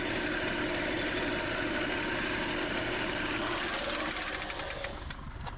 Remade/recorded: recorded